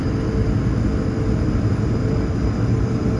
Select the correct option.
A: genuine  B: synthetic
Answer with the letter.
A